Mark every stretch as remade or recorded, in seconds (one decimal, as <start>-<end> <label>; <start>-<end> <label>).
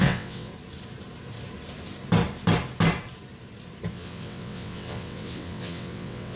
0.0-0.5 remade; 0.5-3.9 recorded; 3.9-6.4 remade